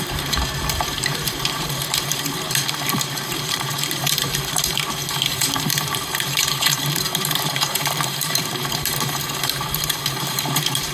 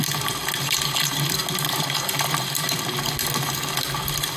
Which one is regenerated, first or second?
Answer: first